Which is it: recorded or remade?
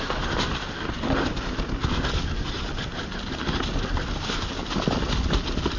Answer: recorded